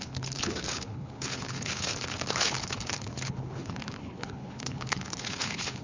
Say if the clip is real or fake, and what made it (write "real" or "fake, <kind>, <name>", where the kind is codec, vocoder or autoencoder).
fake, codec, HILCodec